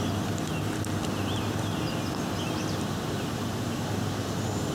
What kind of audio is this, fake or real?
real